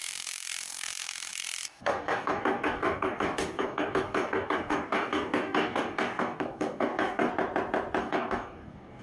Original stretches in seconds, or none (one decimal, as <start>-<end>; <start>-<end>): 7.3-8.0